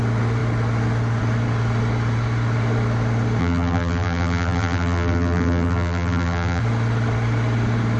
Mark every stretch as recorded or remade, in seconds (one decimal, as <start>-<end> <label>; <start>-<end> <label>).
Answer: 0.0-3.4 recorded; 3.4-6.6 remade; 6.6-8.0 recorded